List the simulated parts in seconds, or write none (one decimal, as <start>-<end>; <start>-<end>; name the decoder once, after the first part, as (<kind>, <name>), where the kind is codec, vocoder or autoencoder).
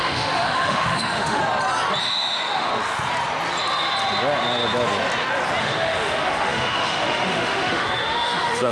0.0-1.4 (autoencoder, DAC-VAE); 2.0-2.7; 5.6-8.7